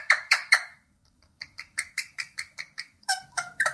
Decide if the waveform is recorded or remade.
remade